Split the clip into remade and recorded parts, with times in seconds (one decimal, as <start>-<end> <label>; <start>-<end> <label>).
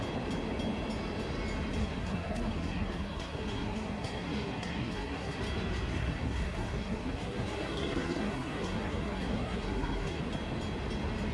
0.0-1.8 recorded; 1.8-5.4 remade; 5.4-5.9 recorded; 5.9-10.2 remade; 10.2-11.3 recorded